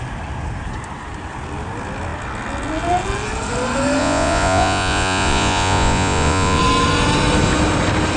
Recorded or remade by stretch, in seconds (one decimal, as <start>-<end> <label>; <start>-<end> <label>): 0.0-4.0 recorded; 4.0-6.6 remade; 6.6-8.2 recorded